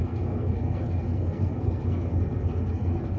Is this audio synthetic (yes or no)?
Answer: yes